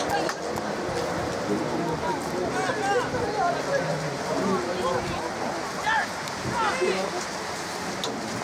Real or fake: real